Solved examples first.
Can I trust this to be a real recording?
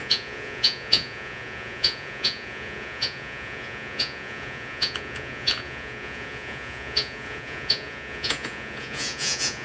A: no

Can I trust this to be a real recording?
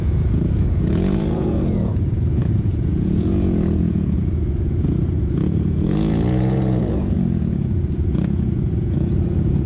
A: no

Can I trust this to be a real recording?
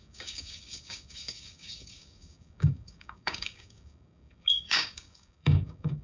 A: no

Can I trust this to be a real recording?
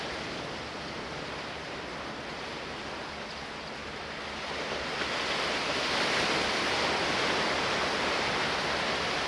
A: yes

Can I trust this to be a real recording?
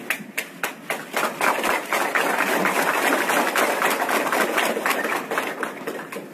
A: yes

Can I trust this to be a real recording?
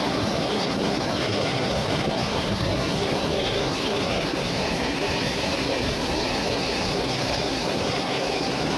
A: no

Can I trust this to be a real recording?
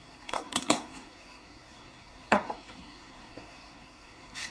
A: no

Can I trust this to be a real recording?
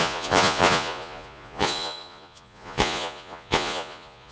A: no